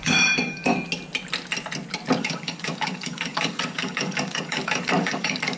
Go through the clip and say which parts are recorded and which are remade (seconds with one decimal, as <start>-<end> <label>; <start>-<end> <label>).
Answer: 0.0-0.7 remade; 0.7-2.2 recorded; 2.2-5.6 remade